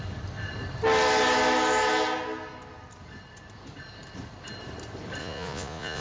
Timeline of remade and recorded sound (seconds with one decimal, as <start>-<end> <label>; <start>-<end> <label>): 0.0-5.2 recorded; 5.2-6.0 remade